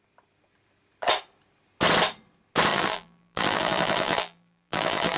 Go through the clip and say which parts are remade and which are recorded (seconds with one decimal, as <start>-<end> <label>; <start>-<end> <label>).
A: 0.0-2.7 recorded; 2.7-5.2 remade